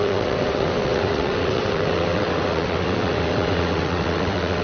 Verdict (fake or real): fake